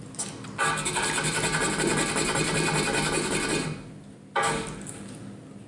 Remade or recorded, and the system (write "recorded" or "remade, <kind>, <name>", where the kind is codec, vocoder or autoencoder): recorded